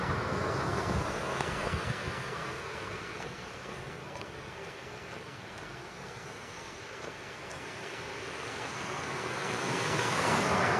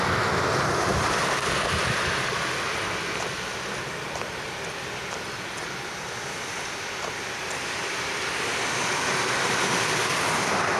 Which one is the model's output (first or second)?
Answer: first